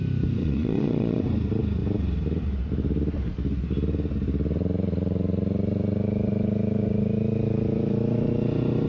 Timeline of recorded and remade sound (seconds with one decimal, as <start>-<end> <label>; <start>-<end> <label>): 0.0-0.4 recorded; 0.4-1.2 remade; 1.2-8.9 recorded